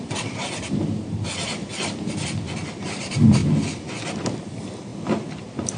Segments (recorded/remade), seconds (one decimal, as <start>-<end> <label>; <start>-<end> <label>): 0.0-3.4 remade; 3.4-4.3 recorded; 4.3-4.9 remade; 4.9-5.8 recorded